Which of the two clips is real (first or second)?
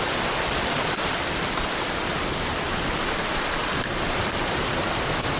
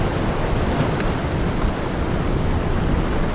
second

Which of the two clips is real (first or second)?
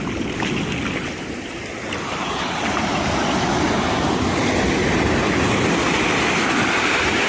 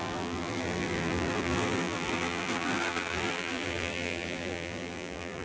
first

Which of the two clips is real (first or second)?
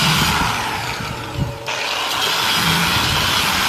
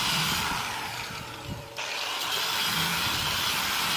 first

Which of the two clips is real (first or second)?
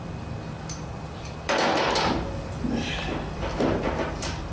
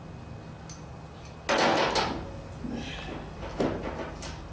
second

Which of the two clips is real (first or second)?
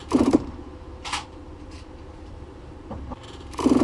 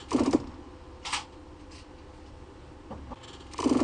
second